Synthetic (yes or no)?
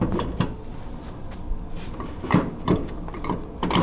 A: no